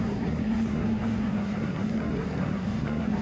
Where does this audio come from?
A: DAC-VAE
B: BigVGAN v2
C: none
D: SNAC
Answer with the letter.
D